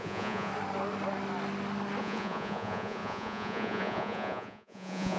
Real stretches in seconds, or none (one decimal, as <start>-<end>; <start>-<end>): 0.5-2.0

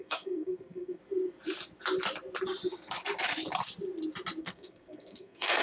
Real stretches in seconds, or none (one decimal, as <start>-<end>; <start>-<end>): 1.0-4.4

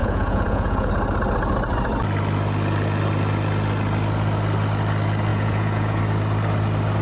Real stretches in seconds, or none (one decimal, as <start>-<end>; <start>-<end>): 0.9-5.3; 6.0-7.0

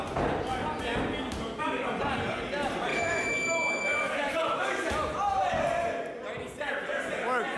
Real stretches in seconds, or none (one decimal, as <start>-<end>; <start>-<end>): 0.0-2.9; 4.9-7.6

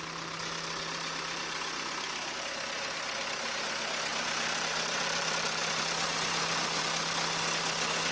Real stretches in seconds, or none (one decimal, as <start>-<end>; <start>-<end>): 0.0-8.1

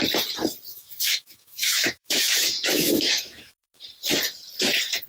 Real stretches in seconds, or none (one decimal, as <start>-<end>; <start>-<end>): 0.0-0.7; 3.8-5.1